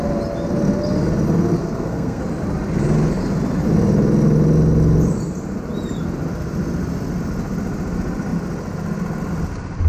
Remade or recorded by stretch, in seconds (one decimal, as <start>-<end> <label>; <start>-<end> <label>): 0.0-1.6 recorded; 1.6-2.2 remade; 2.2-9.9 recorded